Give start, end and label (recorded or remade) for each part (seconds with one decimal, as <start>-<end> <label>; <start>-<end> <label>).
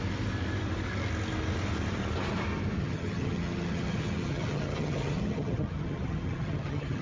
0.0-2.8 recorded; 2.8-7.0 remade